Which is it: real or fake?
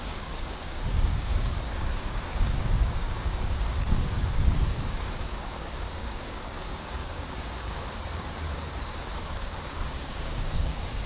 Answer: fake